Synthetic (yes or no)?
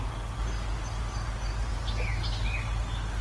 no